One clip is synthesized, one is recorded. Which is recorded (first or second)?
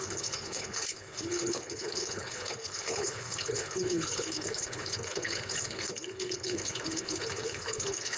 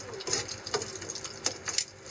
second